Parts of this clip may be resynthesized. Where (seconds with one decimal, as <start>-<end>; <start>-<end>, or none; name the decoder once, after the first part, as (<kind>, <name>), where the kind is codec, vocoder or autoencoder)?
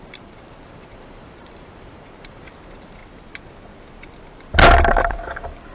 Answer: 0.0-3.0 (vocoder, BigVGAN v2); 5.1-5.7